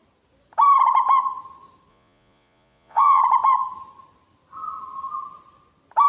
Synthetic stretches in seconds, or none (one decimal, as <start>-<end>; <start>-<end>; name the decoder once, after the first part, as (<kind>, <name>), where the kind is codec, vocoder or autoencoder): 1.9-3.2 (vocoder, Vocos)

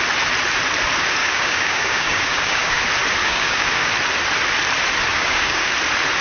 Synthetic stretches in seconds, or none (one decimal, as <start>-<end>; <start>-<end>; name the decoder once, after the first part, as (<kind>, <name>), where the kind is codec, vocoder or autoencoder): 1.2-2.8 (codec, DAC); 3.2-3.9; 5.1-5.7

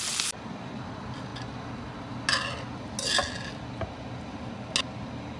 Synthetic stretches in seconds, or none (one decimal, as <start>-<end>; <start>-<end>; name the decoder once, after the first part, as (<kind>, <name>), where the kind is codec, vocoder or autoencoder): none

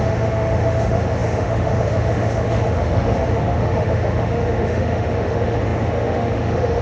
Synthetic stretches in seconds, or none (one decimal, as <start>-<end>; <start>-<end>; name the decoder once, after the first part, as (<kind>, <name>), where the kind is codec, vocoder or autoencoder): 0.0-6.8 (autoencoder, DAC-VAE)